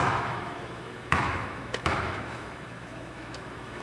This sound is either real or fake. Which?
fake